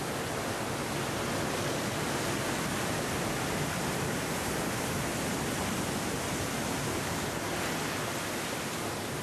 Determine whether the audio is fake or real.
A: real